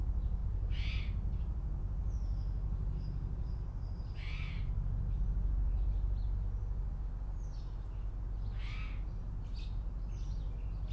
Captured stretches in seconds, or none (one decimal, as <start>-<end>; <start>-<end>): 0.0-0.4; 1.0-10.9